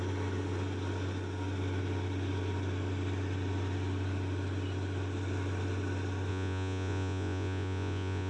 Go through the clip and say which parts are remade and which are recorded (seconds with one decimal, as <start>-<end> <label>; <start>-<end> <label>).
0.0-6.3 recorded; 6.3-8.3 remade